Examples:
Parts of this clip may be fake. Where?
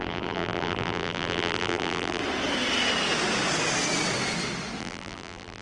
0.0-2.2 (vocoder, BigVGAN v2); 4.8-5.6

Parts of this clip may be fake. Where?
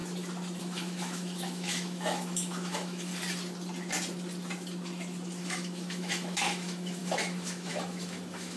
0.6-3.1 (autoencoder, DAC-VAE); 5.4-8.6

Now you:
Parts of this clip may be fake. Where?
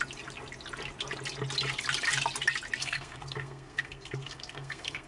2.8-5.1 (codec, SNAC)